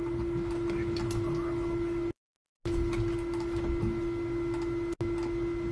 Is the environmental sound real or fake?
real